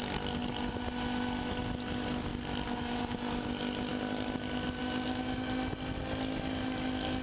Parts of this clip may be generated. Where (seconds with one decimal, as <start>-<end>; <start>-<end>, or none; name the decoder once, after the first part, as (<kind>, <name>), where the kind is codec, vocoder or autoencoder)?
none